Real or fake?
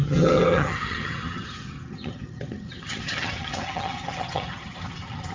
fake